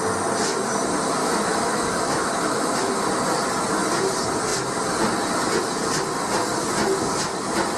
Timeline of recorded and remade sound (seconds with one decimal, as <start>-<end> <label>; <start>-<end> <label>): 0.0-1.2 recorded; 1.2-3.1 remade; 3.1-7.8 recorded